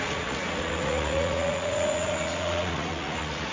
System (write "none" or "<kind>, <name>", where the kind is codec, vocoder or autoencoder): vocoder, Vocos